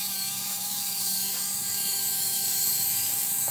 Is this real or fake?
fake